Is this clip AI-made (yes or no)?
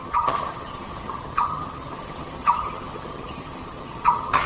yes